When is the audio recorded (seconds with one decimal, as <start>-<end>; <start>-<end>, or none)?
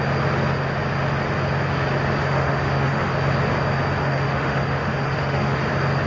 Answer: 0.0-2.2; 3.1-4.0; 5.6-6.1